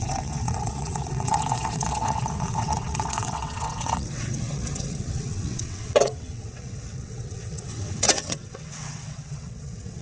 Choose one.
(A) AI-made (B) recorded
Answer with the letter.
A